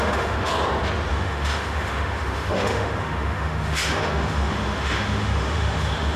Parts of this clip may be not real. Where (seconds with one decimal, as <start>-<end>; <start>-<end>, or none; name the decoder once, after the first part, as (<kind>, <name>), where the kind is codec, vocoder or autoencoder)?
0.0-0.5 (autoencoder, DAC-VAE); 1.1-6.2